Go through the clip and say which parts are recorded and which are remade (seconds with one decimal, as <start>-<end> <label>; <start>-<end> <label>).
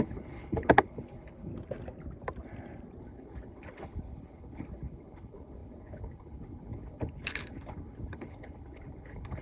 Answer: 0.0-1.5 remade; 1.5-3.0 recorded; 3.0-9.4 remade